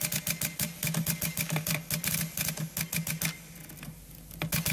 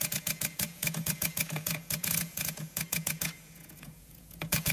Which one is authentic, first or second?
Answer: first